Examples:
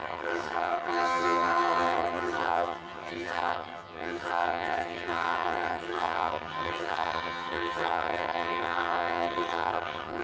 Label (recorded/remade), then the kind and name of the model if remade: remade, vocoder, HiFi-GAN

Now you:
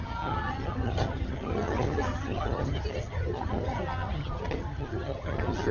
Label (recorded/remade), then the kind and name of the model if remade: remade, vocoder, HiFi-GAN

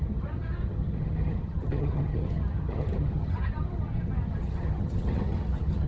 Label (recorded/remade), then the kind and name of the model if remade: remade, vocoder, HiFi-GAN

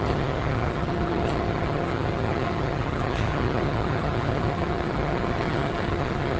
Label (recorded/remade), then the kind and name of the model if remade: remade, vocoder, HiFi-GAN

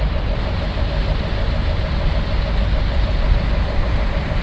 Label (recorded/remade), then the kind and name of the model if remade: recorded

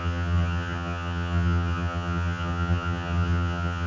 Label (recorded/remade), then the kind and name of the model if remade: remade, vocoder, HiFi-GAN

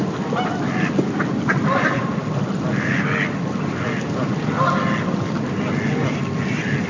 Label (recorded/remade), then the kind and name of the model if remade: recorded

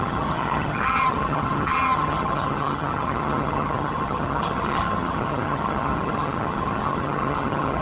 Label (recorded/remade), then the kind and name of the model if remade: remade, vocoder, HiFi-GAN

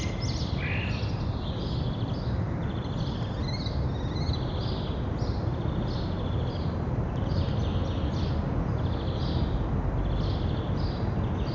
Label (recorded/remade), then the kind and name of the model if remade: recorded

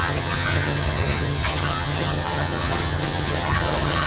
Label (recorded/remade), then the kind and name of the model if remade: remade, vocoder, HiFi-GAN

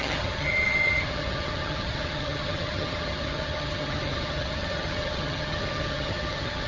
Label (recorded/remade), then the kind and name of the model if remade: remade, vocoder, HiFi-GAN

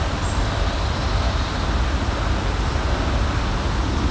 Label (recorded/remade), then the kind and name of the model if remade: recorded